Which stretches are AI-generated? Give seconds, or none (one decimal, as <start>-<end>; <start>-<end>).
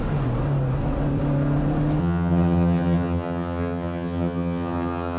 2.0-5.2